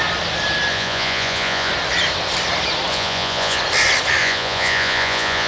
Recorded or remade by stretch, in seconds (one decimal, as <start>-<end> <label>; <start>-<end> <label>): 0.0-0.7 recorded; 0.7-1.7 remade; 1.7-2.9 recorded; 2.9-3.6 remade; 3.6-4.2 recorded; 4.2-5.5 remade